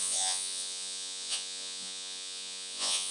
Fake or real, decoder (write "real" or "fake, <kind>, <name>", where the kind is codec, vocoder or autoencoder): fake, vocoder, Vocos